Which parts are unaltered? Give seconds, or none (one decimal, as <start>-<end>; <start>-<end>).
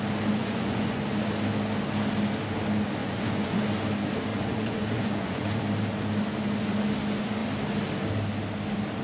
0.0-0.4; 1.0-3.0; 3.6-4.3; 5.6-9.0